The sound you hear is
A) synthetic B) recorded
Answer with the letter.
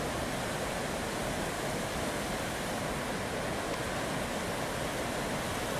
B